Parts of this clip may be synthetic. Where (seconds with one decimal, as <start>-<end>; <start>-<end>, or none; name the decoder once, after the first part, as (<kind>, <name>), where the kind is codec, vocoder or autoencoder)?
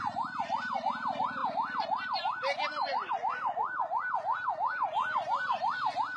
0.0-1.4 (vocoder, BigVGAN v2); 3.1-6.2